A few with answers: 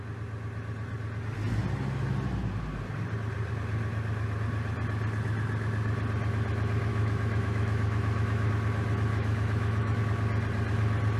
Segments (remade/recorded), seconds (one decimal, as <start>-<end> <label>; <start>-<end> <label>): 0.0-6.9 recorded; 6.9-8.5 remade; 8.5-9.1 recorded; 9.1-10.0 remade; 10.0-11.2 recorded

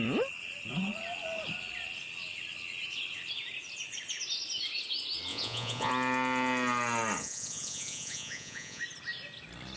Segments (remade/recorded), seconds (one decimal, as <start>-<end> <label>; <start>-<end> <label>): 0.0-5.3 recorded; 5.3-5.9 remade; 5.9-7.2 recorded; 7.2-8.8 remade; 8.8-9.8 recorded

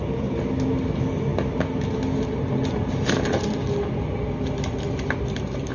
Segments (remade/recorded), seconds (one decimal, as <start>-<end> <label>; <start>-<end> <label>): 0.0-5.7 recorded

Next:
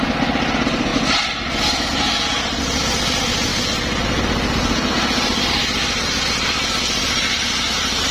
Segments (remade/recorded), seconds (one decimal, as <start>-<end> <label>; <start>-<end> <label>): 0.0-8.1 recorded